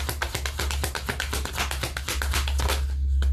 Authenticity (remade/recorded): recorded